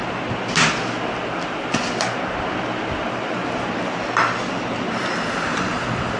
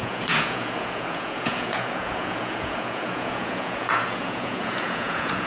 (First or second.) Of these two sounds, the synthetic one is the second